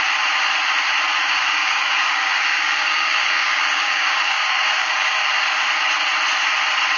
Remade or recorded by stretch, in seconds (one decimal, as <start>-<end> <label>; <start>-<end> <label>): 0.0-1.2 recorded; 1.2-5.3 remade; 5.3-7.0 recorded